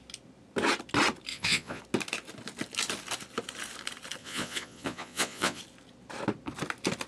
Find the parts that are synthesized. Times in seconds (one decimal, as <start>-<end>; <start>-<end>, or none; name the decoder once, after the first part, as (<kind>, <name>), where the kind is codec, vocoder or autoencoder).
1.3-1.8 (vocoder, Vocos); 4.2-5.6